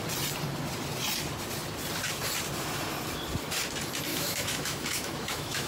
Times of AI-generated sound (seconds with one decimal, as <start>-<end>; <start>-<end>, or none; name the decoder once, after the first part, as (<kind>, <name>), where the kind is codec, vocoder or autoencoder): 4.1-5.7 (autoencoder, DAC-VAE)

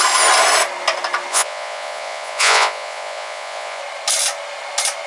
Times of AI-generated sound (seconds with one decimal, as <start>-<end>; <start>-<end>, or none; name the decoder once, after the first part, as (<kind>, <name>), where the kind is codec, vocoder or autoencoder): 1.3-3.8 (vocoder, Vocos)

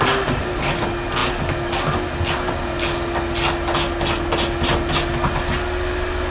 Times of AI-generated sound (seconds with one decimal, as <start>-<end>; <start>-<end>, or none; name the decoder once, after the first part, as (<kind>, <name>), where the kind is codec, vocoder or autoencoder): none

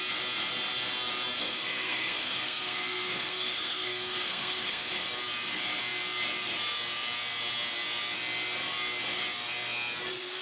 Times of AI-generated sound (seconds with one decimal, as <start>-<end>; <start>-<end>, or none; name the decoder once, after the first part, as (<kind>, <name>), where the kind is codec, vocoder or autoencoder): 1.4-4.9 (codec, SNAC)